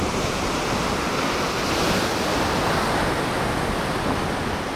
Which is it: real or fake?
real